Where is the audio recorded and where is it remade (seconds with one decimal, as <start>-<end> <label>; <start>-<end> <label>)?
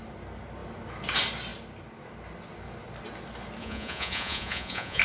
0.0-3.6 recorded; 3.6-5.0 remade